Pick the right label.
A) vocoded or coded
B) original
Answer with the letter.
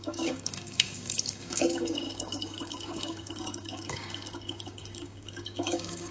A